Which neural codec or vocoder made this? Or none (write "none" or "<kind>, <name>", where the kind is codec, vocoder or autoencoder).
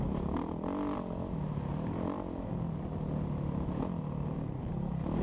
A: none